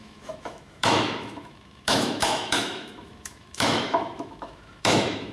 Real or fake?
fake